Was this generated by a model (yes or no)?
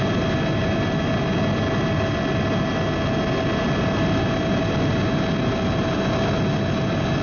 no